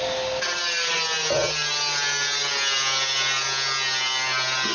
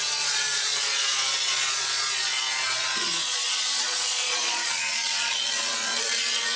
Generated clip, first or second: second